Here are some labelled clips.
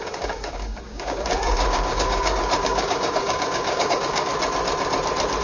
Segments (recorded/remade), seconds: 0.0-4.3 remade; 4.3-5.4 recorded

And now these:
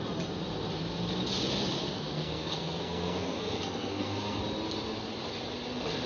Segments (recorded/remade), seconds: 0.0-1.8 recorded; 1.8-4.4 remade; 4.4-6.1 recorded